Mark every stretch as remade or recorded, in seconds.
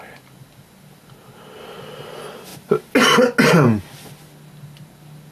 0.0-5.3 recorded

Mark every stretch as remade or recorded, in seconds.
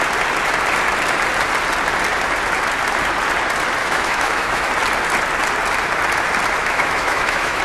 0.0-3.8 recorded; 3.8-4.7 remade; 4.7-6.6 recorded; 6.6-7.6 remade